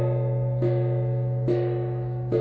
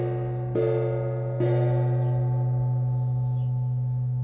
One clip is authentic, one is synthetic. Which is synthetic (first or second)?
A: first